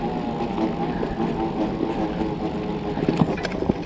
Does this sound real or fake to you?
real